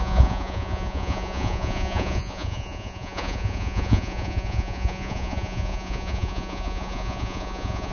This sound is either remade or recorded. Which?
remade